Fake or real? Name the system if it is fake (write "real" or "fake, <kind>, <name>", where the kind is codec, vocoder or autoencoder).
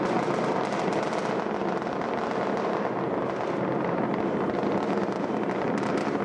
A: real